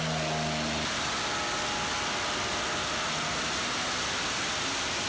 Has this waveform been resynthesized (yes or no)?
no